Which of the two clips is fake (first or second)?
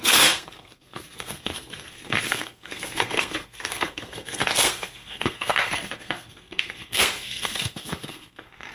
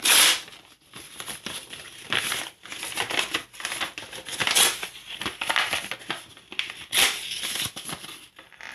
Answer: first